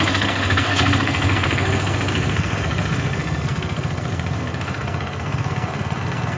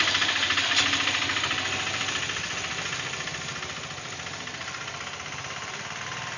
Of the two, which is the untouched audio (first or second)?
second